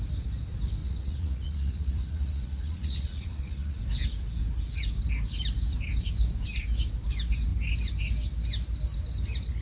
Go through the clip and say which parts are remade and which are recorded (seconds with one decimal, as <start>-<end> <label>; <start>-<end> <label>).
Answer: 0.0-0.8 recorded; 0.8-3.8 remade; 3.8-9.6 recorded